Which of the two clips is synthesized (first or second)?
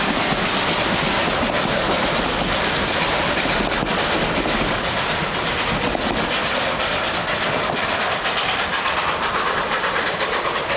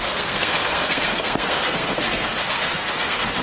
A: second